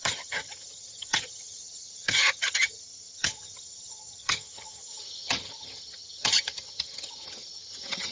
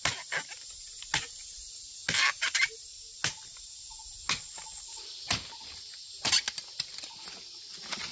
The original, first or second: second